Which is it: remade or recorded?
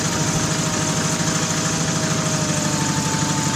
recorded